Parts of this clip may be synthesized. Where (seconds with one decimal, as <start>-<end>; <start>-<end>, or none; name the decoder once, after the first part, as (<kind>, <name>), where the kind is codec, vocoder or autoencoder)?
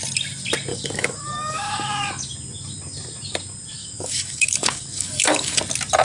0.7-2.1 (codec, DAC); 3.8-5.6